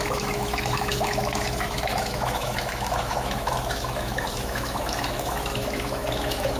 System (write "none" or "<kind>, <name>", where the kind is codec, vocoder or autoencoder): autoencoder, DAC-VAE